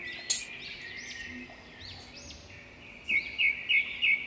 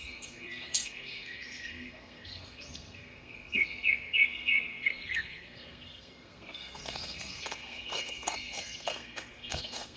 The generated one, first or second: second